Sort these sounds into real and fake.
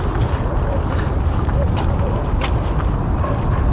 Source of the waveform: real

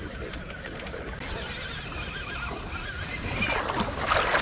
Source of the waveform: real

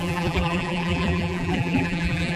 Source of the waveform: fake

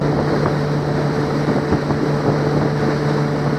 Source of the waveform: real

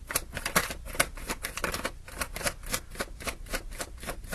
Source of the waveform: real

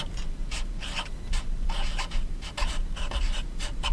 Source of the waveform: fake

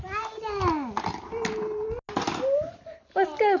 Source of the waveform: real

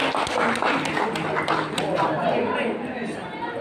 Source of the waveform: real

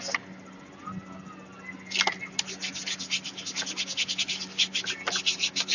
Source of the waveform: real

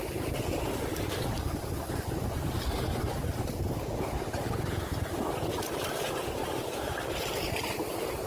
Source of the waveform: real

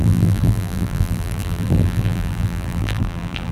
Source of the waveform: fake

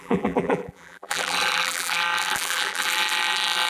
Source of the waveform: fake